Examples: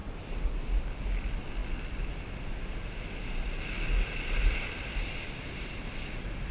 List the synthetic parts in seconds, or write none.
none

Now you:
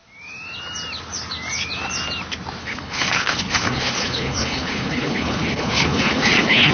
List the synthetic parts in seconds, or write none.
2.6-6.7 (codec, HILCodec)

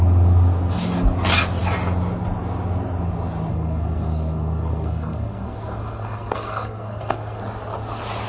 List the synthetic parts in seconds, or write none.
3.5-7.4 (codec, SNAC)

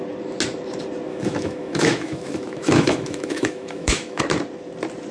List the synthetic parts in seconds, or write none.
1.1-4.2 (autoencoder, DAC-VAE)

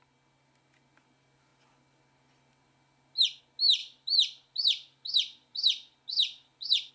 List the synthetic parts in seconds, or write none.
3.8-6.9 (vocoder, BigVGAN v2)